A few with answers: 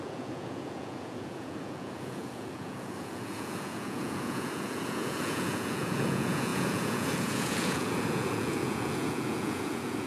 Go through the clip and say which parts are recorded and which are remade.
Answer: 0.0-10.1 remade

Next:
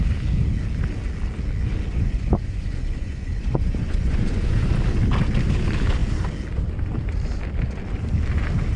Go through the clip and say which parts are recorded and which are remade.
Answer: 0.0-1.9 recorded; 1.9-4.7 remade; 4.7-8.8 recorded

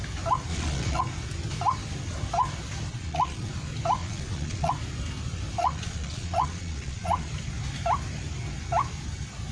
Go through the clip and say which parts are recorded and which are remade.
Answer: 0.0-0.5 recorded; 0.5-1.0 remade; 1.0-2.9 recorded; 2.9-3.5 remade; 3.5-4.0 recorded; 4.0-4.7 remade; 4.7-5.6 recorded; 5.6-7.3 remade; 7.3-9.5 recorded

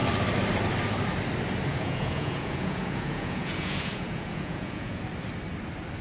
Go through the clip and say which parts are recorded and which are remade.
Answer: 0.0-1.7 recorded; 1.7-5.0 remade; 5.0-6.0 recorded